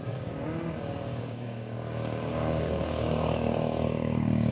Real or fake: fake